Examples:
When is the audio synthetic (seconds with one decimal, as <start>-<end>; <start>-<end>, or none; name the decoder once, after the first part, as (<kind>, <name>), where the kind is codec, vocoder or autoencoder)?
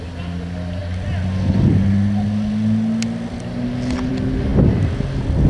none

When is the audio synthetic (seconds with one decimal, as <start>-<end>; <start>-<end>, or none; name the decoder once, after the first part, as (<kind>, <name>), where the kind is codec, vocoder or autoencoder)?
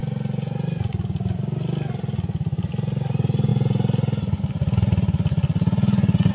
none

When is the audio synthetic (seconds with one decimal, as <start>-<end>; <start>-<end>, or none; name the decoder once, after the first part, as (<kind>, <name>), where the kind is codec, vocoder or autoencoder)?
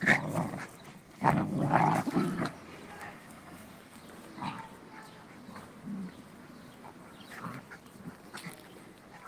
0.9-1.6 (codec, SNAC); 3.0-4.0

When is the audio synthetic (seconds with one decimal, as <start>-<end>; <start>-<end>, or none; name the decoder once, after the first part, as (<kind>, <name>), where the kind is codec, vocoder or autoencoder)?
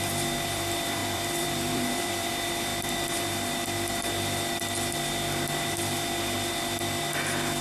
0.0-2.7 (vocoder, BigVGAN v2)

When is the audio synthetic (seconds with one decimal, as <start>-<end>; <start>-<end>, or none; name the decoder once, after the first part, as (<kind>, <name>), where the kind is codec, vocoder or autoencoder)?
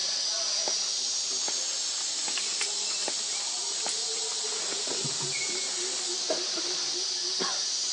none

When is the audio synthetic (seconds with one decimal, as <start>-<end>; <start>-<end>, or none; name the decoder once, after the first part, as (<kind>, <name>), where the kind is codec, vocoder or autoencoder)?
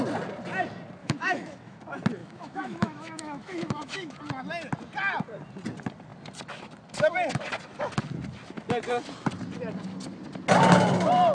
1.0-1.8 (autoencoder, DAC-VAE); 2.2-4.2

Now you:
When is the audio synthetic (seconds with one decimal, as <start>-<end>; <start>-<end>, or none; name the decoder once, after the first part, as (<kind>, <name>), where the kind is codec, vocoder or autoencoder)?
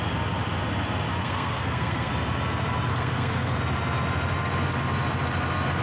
1.2-2.1 (codec, SNAC); 2.9-3.6